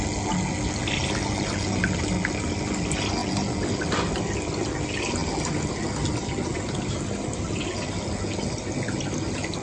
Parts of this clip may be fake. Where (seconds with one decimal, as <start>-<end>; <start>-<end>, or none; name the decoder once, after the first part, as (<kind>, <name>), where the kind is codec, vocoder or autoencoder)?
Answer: none